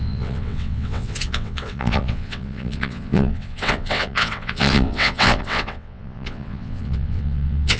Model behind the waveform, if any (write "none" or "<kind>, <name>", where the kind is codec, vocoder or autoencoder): vocoder, WaveNeXt